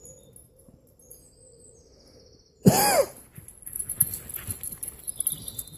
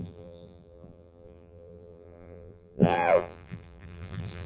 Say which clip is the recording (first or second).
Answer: first